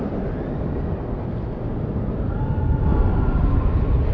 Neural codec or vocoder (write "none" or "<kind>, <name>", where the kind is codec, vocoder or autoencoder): none